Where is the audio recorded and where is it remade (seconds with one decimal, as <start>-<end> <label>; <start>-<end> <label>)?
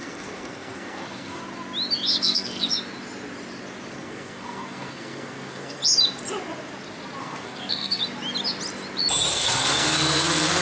0.0-1.4 remade; 1.4-2.2 recorded; 2.2-2.7 remade; 2.7-3.9 recorded; 3.9-5.8 remade; 5.8-7.2 recorded; 7.2-8.0 remade; 8.0-9.3 recorded; 9.3-10.6 remade